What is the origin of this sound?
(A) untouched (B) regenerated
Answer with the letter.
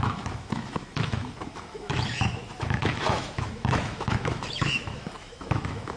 B